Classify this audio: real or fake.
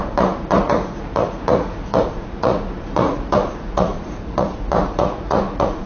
fake